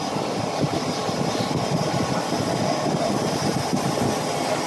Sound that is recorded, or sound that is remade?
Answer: recorded